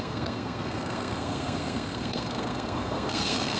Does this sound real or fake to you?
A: fake